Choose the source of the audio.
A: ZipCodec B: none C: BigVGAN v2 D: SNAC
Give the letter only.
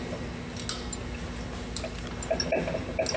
B